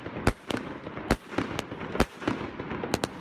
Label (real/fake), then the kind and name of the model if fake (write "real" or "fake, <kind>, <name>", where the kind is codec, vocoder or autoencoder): real